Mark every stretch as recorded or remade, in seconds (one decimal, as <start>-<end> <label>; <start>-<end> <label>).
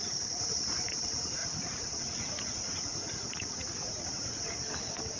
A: 0.0-0.5 remade; 0.5-1.4 recorded; 1.4-4.5 remade; 4.5-5.2 recorded